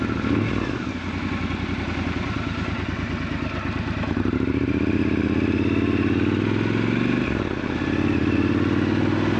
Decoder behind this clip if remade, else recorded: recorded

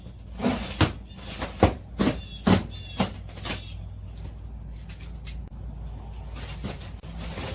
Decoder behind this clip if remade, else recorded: recorded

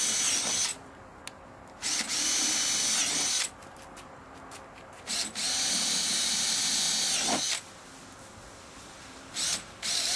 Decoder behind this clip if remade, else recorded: recorded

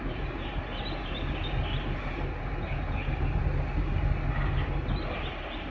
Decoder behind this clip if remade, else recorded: recorded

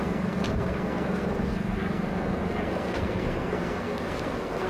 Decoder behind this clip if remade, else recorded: remade, codec, SNAC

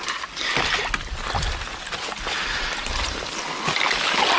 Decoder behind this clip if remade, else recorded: recorded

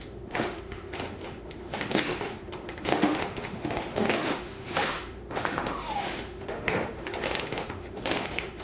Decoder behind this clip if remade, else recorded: remade, autoencoder, DAC-VAE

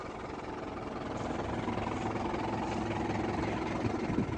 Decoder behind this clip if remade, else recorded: recorded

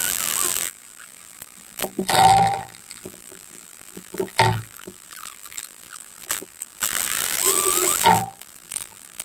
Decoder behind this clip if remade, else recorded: remade, vocoder, BigVGAN v2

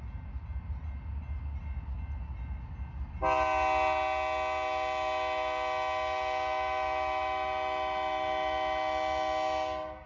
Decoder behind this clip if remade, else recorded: recorded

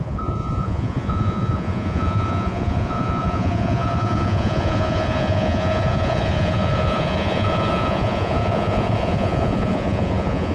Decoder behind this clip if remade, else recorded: remade, vocoder, Vocos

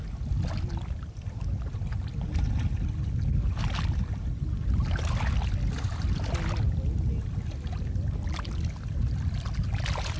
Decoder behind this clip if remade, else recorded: recorded